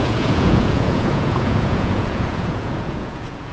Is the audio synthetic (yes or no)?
yes